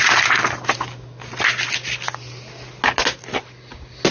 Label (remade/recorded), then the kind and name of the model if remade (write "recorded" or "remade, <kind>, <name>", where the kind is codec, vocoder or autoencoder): recorded